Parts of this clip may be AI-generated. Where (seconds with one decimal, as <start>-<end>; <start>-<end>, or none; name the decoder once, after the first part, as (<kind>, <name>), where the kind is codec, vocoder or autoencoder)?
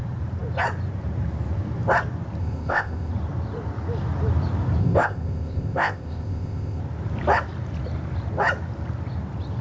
2.4-3.1 (codec, ZipCodec); 4.8-6.8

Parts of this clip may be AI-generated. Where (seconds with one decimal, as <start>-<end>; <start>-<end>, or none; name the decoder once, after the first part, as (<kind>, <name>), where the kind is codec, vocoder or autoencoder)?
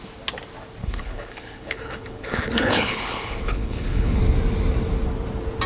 0.8-4.2 (codec, HILCodec)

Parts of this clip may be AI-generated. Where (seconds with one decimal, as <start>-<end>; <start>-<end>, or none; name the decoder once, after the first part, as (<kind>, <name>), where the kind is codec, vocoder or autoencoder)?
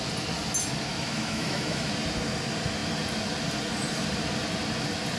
0.9-1.9 (autoencoder, DAC-VAE)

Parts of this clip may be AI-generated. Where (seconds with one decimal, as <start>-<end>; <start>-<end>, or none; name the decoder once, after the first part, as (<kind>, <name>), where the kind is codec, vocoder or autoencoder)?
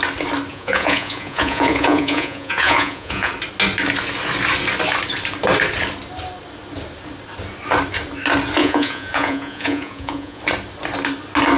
0.5-3.3 (vocoder, Vocos); 8.6-10.4